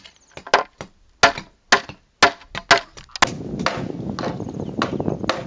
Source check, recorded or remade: recorded